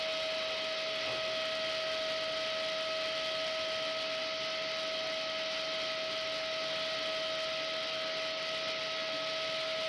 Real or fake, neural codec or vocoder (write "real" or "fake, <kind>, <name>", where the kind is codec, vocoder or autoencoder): real